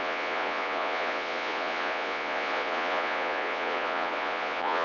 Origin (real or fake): fake